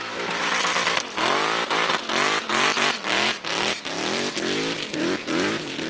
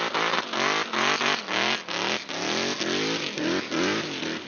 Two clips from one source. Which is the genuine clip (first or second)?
second